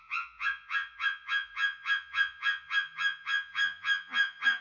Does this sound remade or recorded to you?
remade